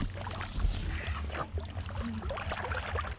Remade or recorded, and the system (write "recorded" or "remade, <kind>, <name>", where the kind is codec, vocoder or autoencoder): recorded